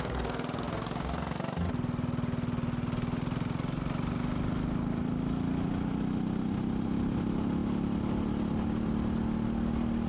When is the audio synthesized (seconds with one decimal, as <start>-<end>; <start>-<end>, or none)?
none